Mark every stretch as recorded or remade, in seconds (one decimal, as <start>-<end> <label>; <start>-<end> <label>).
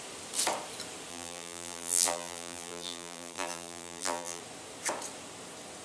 0.0-1.1 recorded; 1.1-4.4 remade; 4.4-5.8 recorded